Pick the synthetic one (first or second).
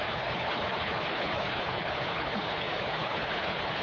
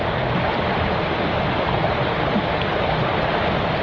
first